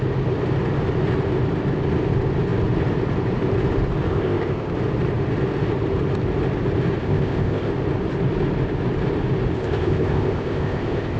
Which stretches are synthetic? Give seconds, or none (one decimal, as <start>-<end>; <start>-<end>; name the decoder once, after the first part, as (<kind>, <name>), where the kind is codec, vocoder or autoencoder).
4.1-4.7 (codec, ZipCodec); 7.0-7.7; 9.6-11.2